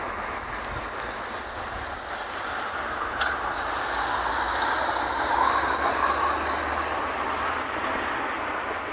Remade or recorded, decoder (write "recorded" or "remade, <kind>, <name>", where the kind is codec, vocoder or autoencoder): recorded